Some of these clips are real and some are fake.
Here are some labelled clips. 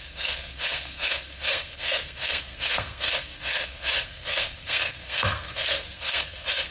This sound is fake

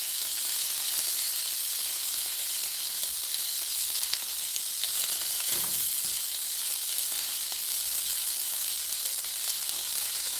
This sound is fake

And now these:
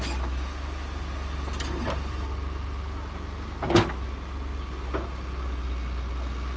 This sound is real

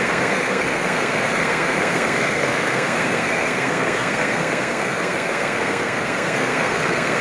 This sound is fake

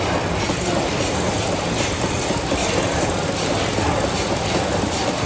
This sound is real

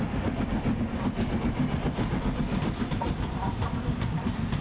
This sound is real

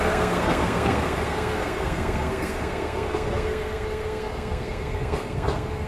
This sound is fake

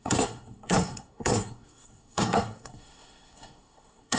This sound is fake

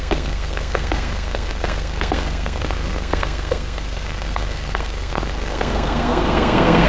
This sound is fake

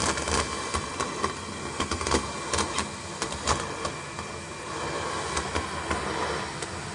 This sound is real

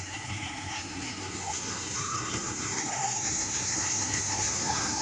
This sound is fake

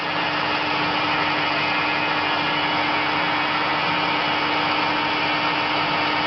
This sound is real